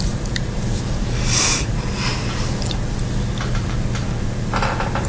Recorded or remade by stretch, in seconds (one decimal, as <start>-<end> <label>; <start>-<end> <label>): 0.0-2.1 remade; 2.1-3.5 recorded; 3.5-5.1 remade